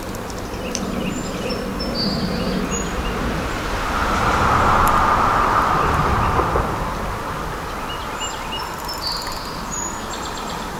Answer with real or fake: real